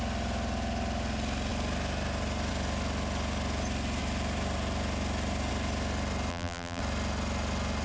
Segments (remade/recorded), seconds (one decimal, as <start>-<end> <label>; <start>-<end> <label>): 0.0-6.3 recorded; 6.3-6.8 remade; 6.8-7.8 recorded